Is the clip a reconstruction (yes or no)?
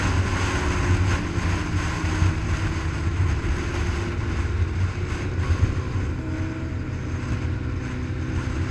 no